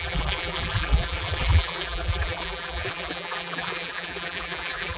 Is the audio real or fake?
fake